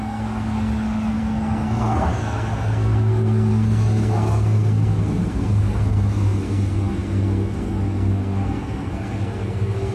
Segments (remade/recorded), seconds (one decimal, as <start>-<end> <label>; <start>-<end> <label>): 0.0-9.9 remade